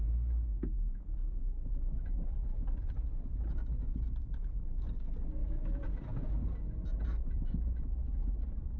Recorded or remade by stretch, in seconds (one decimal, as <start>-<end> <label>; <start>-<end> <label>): 0.0-0.5 recorded; 0.5-1.7 remade; 1.7-5.4 recorded; 5.4-6.3 remade; 6.3-8.8 recorded